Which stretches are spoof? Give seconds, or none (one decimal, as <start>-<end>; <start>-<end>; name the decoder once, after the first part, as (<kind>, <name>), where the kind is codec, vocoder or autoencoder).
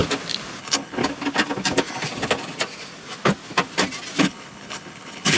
0.6-1.0 (codec, HILCodec); 4.2-5.4